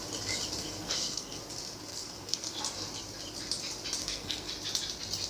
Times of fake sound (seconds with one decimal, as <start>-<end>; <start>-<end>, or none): 0.6-1.4; 1.9-2.6; 4.0-4.5